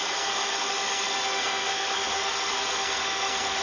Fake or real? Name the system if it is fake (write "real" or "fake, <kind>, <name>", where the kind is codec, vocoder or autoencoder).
fake, codec, SNAC